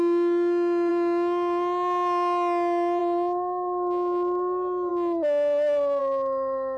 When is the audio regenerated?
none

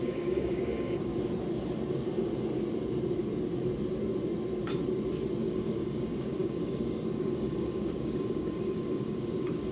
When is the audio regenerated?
0.0-1.1 (codec, DAC); 5.4-9.7

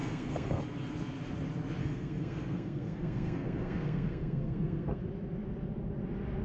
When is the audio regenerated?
0.0-0.6 (codec, SNAC); 1.8-5.0

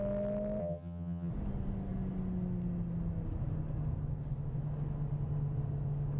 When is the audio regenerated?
0.6-1.3 (vocoder, HiFi-GAN)

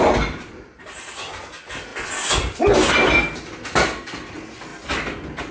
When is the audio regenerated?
none